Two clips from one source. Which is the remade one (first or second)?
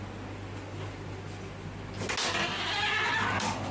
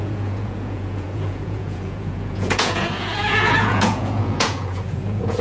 second